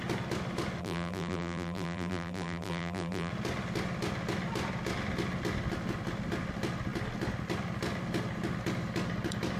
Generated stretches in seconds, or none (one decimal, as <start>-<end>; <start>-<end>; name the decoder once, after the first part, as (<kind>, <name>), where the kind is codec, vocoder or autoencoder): 0.8-3.3 (vocoder, BigVGAN v2)